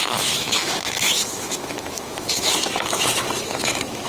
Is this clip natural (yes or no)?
no